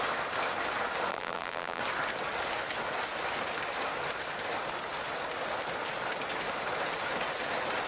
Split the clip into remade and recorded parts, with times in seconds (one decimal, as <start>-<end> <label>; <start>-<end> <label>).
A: 0.0-1.1 recorded; 1.1-1.8 remade; 1.8-7.9 recorded